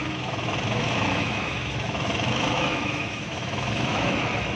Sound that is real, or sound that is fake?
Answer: fake